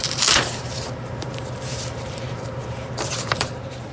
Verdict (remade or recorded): remade